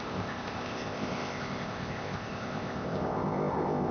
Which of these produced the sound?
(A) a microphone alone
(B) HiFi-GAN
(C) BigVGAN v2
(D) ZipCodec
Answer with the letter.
D